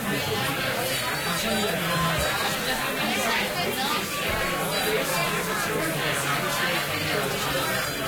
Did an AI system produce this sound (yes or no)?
no